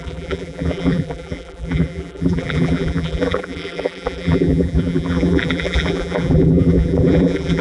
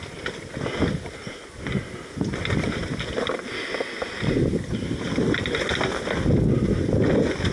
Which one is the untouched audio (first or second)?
second